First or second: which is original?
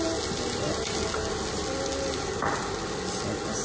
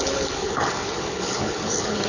first